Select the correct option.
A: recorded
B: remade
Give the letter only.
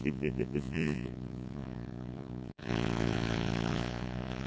B